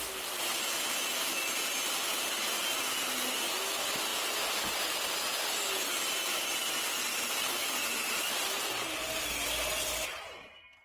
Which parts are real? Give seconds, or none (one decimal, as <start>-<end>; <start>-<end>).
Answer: 0.0-10.8